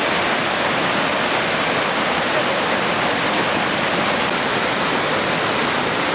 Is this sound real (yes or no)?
yes